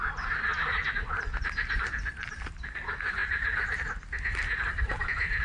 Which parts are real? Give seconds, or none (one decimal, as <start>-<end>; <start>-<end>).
3.2-5.4